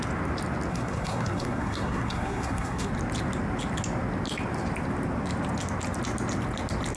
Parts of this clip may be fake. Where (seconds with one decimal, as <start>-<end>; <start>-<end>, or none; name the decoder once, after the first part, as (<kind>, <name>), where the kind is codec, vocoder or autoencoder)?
0.7-2.9 (codec, SNAC)